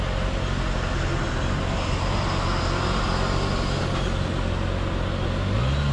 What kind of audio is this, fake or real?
real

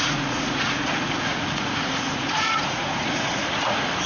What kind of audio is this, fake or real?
fake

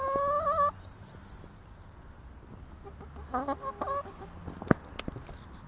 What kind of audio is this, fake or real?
real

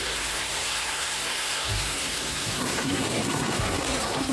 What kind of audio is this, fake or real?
fake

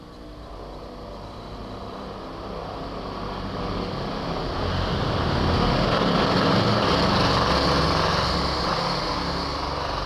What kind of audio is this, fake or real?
real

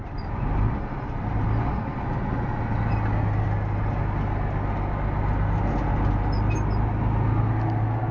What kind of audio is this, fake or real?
real